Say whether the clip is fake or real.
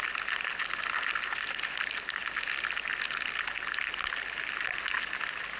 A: real